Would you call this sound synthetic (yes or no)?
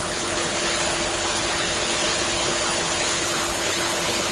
yes